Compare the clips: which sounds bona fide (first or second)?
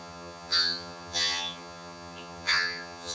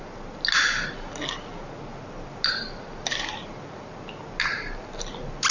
second